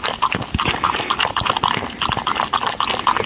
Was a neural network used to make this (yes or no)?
no